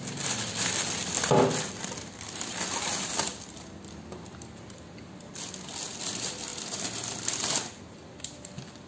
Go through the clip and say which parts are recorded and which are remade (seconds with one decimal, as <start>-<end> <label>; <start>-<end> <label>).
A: 0.0-8.9 recorded